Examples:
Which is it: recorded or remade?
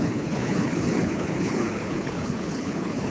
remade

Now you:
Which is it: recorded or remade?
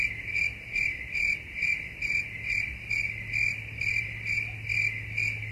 recorded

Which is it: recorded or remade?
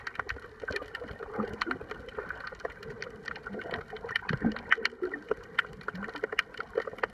recorded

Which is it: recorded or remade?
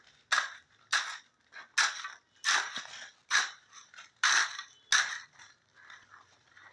recorded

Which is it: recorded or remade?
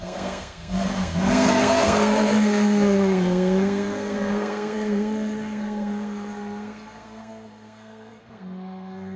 remade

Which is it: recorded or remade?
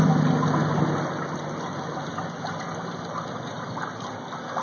recorded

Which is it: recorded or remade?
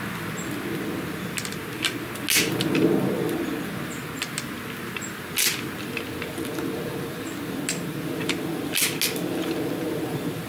recorded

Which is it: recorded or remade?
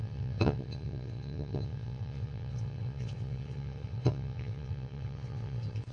remade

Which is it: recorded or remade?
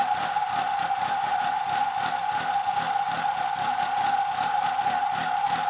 recorded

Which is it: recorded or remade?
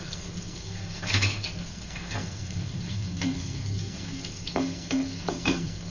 remade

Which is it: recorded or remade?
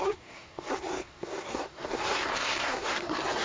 remade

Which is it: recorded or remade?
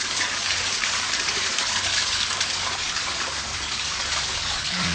remade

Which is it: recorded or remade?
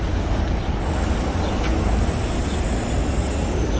recorded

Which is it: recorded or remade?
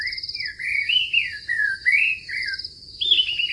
recorded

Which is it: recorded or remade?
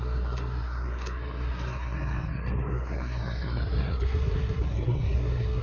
remade